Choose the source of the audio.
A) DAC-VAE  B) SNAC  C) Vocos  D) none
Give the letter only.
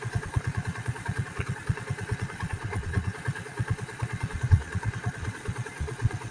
C